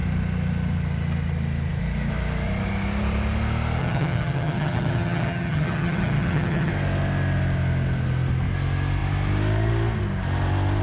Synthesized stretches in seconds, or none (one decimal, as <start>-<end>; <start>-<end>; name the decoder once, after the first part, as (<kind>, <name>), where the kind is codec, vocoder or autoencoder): 3.8-6.7 (vocoder, HiFi-GAN)